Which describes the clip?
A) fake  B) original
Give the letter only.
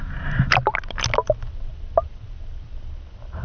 B